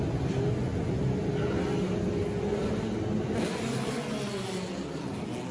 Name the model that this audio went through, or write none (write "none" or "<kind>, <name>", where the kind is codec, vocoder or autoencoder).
none